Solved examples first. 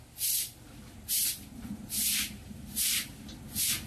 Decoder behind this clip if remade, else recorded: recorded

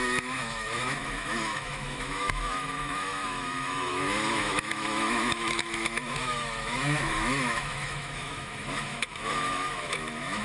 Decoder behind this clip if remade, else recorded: remade, autoencoder, DAC-VAE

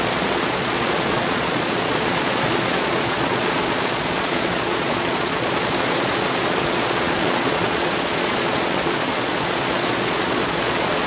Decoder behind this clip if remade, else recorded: remade, vocoder, Vocos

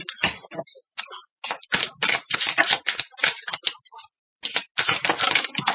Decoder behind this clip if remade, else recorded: recorded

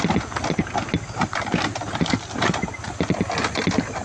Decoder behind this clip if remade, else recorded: recorded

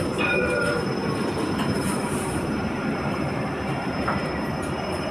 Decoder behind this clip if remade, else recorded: remade, vocoder, BigVGAN v2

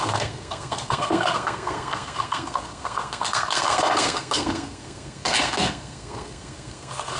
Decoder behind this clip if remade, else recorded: remade, codec, SNAC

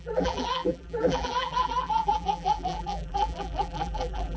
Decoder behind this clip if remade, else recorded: remade, vocoder, BigVGAN v2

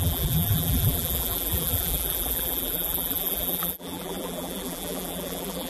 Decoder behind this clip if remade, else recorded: remade, vocoder, BigVGAN v2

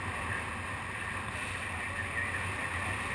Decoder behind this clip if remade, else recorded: recorded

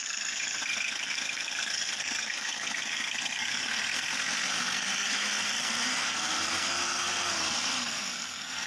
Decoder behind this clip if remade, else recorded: remade, codec, SNAC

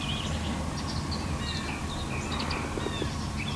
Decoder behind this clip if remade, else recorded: recorded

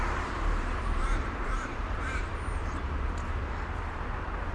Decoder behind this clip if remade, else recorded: remade, vocoder, BigVGAN v2